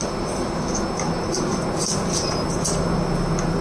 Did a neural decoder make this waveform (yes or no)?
no